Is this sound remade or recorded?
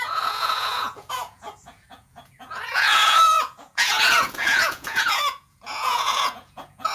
remade